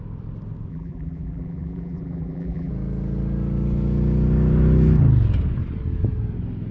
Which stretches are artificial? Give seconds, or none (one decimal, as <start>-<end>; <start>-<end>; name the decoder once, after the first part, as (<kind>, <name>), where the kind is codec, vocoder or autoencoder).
0.7-2.7 (vocoder, BigVGAN v2)